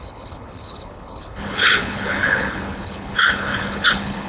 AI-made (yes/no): yes